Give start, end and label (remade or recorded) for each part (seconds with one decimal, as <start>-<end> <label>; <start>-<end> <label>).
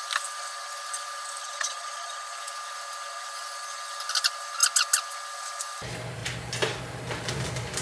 0.0-1.4 recorded; 1.4-2.4 remade; 2.4-7.8 recorded